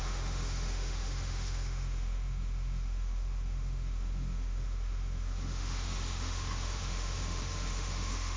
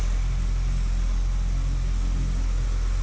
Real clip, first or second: second